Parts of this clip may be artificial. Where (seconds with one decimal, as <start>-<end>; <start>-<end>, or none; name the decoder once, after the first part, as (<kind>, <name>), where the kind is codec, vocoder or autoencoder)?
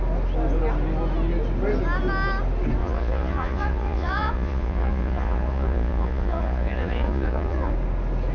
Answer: 2.8-7.7 (vocoder, Vocos)